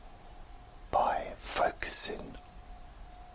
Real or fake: real